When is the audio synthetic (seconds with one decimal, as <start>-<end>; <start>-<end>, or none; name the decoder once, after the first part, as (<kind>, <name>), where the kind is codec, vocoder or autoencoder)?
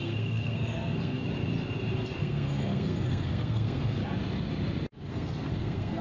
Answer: 0.0-1.2 (codec, SNAC); 2.2-4.0; 5.1-6.0